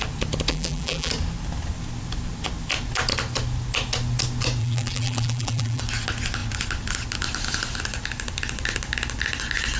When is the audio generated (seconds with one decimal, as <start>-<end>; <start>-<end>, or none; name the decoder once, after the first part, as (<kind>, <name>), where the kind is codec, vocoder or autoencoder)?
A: 0.5-1.1 (vocoder, BigVGAN v2); 4.6-5.8